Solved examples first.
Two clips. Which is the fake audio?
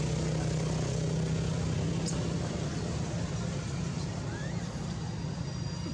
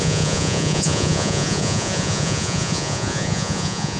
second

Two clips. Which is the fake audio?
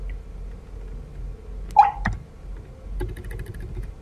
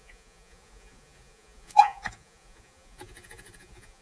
second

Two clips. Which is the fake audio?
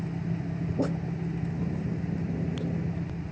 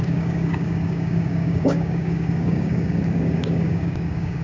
second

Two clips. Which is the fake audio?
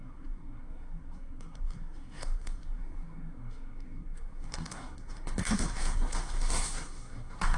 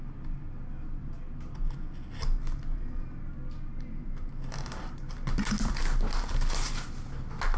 first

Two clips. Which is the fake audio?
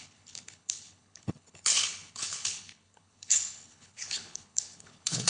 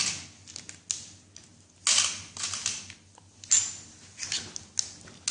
first